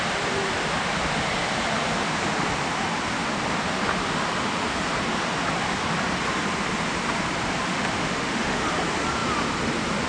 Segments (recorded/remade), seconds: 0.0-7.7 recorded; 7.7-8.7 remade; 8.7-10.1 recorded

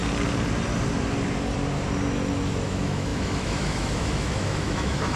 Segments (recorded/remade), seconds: 0.0-2.7 recorded; 2.7-5.2 remade